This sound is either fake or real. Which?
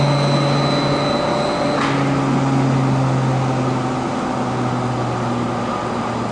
real